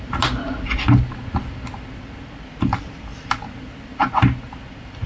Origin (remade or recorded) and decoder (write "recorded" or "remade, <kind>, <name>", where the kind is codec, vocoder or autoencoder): recorded